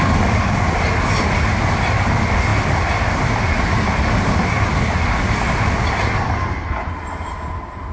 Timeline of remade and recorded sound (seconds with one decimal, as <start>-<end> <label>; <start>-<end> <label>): 0.0-7.9 recorded